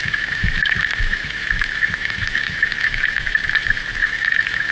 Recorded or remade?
remade